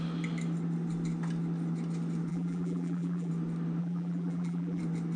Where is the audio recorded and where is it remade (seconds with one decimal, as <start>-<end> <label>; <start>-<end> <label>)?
0.0-2.3 recorded; 2.3-3.3 remade; 3.3-3.8 recorded; 3.8-4.8 remade; 4.8-5.2 recorded